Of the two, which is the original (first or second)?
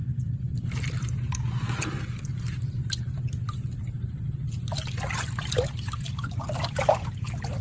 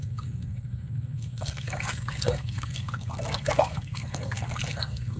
first